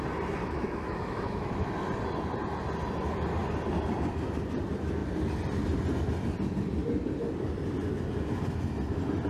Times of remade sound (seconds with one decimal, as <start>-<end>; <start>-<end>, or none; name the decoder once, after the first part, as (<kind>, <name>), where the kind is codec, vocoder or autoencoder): 0.4-1.7 (autoencoder, DAC-VAE)